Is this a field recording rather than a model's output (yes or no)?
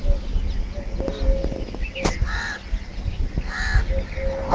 yes